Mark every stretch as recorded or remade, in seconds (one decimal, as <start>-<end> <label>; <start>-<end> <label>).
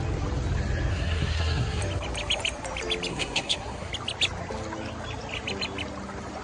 0.0-0.9 recorded; 0.9-1.8 remade; 1.8-3.1 recorded; 3.1-3.9 remade; 3.9-6.4 recorded